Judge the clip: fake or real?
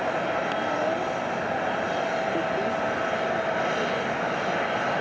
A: real